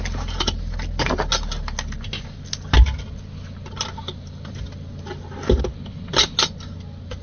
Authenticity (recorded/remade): recorded